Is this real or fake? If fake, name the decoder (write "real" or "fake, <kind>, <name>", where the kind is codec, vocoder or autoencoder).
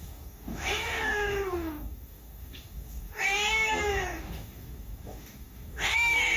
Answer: fake, codec, DAC